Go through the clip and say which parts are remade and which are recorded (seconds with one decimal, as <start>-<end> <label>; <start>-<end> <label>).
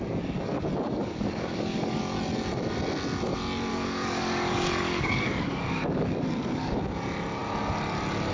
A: 0.0-1.0 recorded; 1.0-2.0 remade; 2.0-3.7 recorded; 3.7-6.8 remade; 6.8-8.3 recorded